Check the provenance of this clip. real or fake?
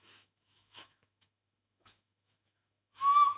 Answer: fake